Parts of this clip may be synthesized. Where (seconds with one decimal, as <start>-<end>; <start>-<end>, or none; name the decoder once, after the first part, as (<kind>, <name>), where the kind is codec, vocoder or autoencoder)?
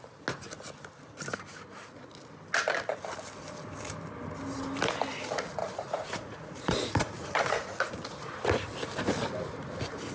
5.6-7.9 (vocoder, Vocos)